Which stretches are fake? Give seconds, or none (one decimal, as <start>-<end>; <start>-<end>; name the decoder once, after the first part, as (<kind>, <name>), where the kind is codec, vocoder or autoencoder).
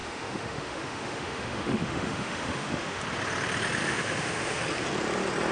0.0-3.0 (autoencoder, DAC-VAE); 3.8-4.6